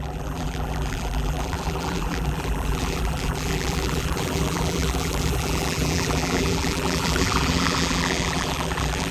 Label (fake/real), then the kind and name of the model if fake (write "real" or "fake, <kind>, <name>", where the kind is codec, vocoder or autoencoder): fake, vocoder, BigVGAN v2